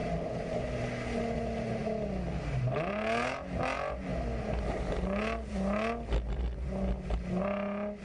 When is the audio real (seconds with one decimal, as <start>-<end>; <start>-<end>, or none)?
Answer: 0.6-8.0